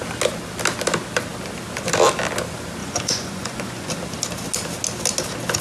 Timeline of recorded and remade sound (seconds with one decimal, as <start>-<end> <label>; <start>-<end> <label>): 0.0-2.8 recorded; 2.8-3.9 remade; 3.9-5.6 recorded